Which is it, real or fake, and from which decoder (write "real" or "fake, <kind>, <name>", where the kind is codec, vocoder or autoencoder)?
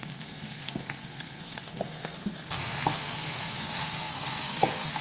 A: fake, codec, SNAC